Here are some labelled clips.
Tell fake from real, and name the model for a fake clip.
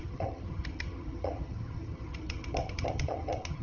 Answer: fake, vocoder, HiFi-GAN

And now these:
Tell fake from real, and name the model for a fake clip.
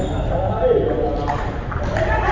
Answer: real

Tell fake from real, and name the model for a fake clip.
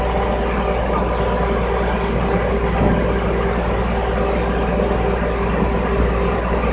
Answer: real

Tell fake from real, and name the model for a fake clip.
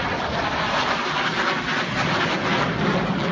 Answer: real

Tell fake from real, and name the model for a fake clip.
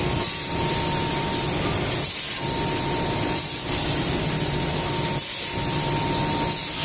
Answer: real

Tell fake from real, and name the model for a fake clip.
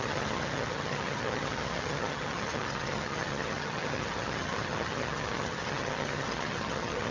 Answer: fake, vocoder, HiFi-GAN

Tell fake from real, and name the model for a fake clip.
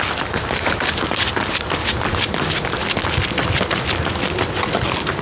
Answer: real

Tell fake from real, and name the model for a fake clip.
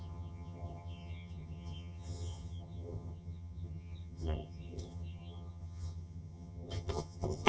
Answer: fake, vocoder, HiFi-GAN